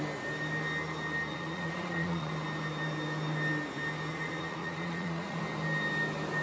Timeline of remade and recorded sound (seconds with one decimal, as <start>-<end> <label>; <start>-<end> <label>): 0.0-1.3 recorded; 1.3-2.3 remade; 2.3-4.1 recorded; 4.1-5.4 remade; 5.4-6.4 recorded